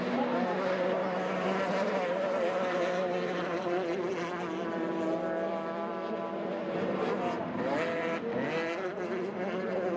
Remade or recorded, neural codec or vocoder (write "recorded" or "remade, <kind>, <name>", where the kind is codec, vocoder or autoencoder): recorded